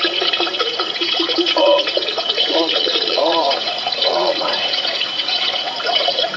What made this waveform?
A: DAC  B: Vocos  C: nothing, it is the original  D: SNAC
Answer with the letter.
B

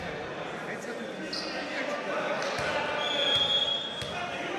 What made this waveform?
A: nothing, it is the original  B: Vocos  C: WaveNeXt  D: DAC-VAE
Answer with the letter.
A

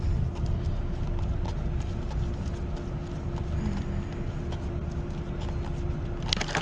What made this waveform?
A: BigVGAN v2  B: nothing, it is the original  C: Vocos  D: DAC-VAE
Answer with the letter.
B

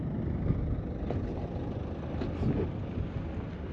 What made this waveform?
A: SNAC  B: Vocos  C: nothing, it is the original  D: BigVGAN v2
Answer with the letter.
C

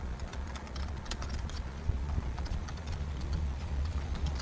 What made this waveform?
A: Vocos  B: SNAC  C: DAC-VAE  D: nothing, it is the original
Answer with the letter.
A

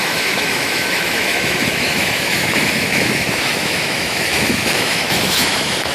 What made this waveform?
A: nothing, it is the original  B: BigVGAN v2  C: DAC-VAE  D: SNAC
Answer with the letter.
C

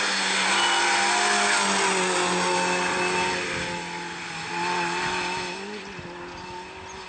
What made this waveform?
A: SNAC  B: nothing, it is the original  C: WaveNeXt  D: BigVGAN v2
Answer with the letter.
B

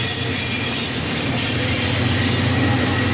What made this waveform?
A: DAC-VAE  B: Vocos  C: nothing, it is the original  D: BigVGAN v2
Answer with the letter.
C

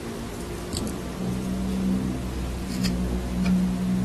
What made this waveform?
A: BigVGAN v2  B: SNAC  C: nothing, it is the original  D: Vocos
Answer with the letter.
C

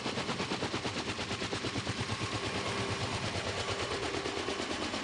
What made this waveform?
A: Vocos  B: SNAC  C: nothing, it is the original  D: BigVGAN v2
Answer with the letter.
C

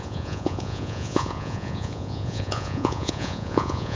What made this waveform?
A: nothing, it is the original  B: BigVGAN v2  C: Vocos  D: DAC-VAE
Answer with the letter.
C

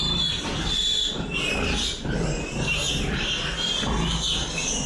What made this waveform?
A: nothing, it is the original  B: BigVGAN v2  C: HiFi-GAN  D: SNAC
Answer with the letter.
A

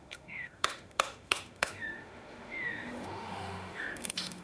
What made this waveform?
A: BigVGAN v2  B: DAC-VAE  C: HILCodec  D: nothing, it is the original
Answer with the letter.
B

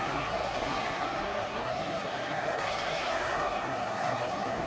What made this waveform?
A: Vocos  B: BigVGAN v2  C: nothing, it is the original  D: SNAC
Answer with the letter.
D